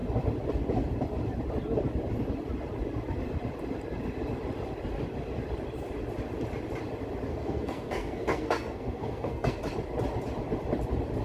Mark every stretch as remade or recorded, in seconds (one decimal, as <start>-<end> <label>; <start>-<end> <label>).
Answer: 0.0-7.3 recorded; 7.3-9.6 remade; 9.6-11.2 recorded